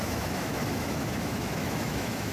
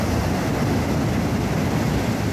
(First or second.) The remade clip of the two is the first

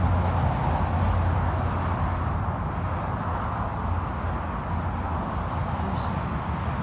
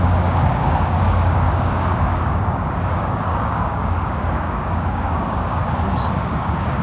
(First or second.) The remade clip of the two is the second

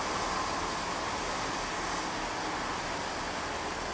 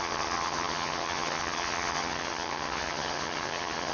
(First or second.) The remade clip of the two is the second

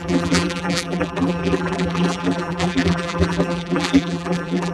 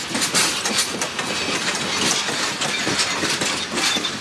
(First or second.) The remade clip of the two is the first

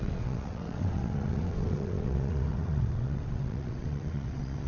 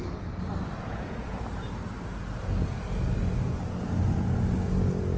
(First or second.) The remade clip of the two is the first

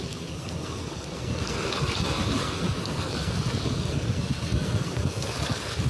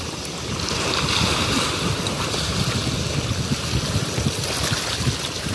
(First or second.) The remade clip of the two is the first